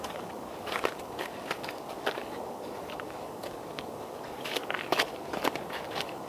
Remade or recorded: remade